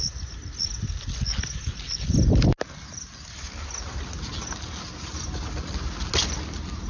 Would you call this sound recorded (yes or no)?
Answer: yes